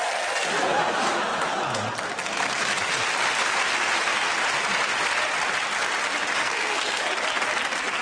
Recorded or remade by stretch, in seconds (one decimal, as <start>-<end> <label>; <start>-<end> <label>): 0.0-6.4 recorded; 6.4-7.0 remade; 7.0-8.0 recorded